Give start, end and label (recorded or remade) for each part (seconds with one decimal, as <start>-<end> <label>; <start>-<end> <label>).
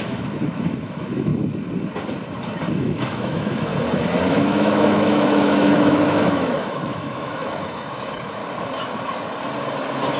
0.0-1.3 remade; 1.3-2.7 recorded; 2.7-3.7 remade; 3.7-4.2 recorded; 4.2-8.4 remade; 8.4-10.2 recorded